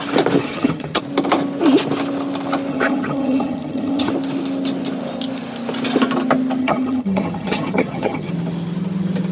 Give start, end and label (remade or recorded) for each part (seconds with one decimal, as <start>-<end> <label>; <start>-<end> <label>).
0.0-0.4 recorded; 0.4-1.0 remade; 1.0-2.7 recorded; 2.7-4.1 remade; 4.1-6.6 recorded; 6.6-8.3 remade; 8.3-9.3 recorded